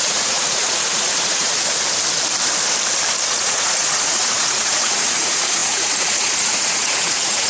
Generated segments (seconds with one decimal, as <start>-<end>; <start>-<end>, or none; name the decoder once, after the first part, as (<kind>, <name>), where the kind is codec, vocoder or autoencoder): 0.0-1.7 (vocoder, Vocos); 3.3-7.5